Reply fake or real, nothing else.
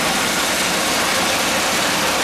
real